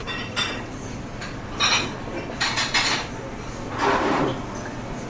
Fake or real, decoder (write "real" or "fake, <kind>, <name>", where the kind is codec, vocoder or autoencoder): fake, vocoder, BigVGAN v2